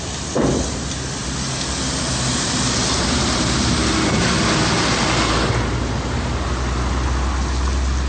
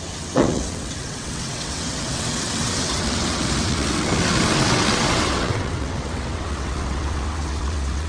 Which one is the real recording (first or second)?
first